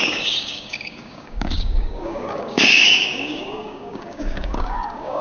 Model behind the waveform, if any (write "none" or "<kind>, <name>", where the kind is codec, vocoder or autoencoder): codec, DAC